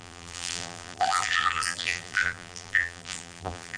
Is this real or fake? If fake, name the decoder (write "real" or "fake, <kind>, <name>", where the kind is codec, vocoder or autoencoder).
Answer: fake, vocoder, BigVGAN v2